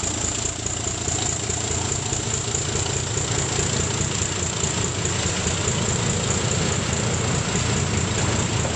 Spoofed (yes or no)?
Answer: no